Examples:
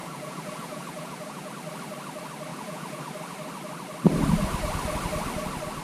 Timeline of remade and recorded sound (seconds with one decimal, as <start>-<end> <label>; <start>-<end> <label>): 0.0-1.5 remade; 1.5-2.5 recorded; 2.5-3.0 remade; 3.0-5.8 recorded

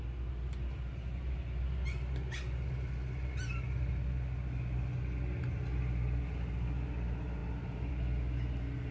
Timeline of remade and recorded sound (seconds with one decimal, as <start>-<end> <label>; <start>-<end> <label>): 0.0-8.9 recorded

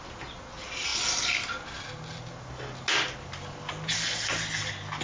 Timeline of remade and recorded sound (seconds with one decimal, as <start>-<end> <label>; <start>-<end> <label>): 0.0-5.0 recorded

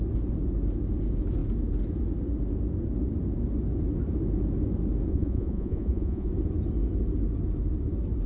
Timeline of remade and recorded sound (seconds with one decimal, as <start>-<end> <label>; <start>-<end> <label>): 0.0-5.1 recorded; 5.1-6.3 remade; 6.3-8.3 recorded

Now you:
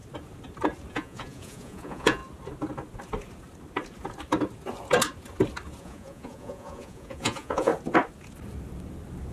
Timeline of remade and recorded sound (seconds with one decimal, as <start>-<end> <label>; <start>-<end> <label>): 0.0-0.9 recorded; 0.9-2.2 remade; 2.2-5.8 recorded; 5.8-7.7 remade; 7.7-9.3 recorded

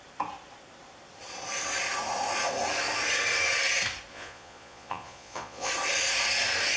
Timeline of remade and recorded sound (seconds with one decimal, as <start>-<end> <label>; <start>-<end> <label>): 0.0-4.1 recorded; 4.1-5.7 remade; 5.7-6.8 recorded

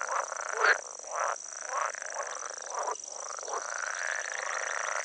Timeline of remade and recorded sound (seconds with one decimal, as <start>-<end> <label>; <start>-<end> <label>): 0.0-5.0 recorded

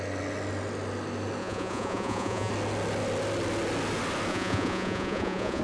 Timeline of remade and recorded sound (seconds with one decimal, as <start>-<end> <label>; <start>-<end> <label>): 0.0-1.4 recorded; 1.4-2.5 remade; 2.5-4.3 recorded; 4.3-5.6 remade